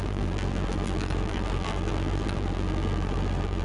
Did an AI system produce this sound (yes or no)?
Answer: yes